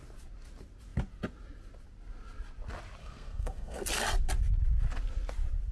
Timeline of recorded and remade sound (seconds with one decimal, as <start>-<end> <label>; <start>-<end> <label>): 0.0-3.0 recorded; 3.0-3.8 remade; 3.8-5.7 recorded